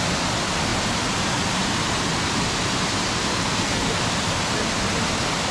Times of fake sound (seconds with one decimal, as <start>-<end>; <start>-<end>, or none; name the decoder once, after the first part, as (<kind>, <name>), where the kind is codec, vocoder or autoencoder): 3.3-4.0 (codec, SNAC)